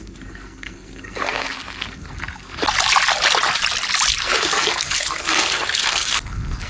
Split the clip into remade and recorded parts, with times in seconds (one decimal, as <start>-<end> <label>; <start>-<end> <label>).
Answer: 0.0-2.6 remade; 2.6-4.2 recorded; 4.2-6.7 remade